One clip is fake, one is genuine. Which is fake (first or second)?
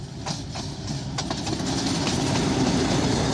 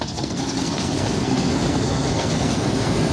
second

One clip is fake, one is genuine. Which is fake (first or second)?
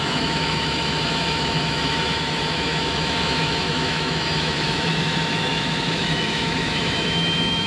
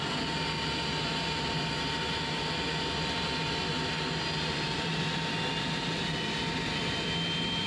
first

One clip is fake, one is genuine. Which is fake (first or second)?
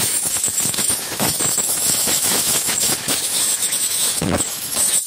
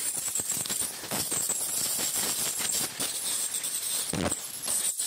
first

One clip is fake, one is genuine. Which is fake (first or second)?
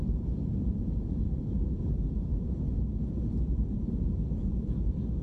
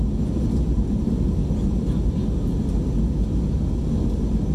first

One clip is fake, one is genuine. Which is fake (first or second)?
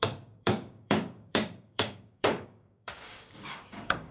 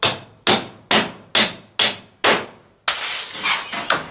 first